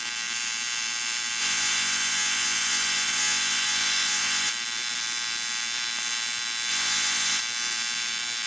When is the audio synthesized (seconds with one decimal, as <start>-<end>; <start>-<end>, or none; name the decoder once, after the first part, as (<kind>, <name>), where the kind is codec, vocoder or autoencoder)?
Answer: 1.4-4.5 (vocoder, Vocos); 6.7-7.4